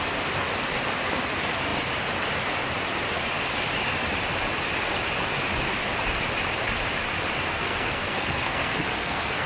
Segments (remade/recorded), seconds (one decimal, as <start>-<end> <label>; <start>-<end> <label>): 0.0-7.5 recorded; 7.5-9.5 remade